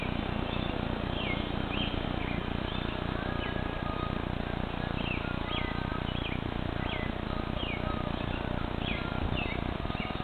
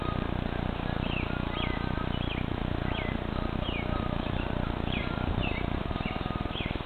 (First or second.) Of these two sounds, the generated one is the second